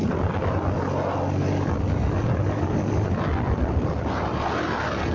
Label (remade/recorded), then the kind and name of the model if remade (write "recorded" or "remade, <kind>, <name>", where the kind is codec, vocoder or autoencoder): recorded